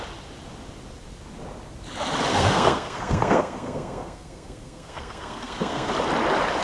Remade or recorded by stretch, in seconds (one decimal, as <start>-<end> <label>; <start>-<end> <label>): 0.0-2.3 recorded; 2.3-5.9 remade; 5.9-6.6 recorded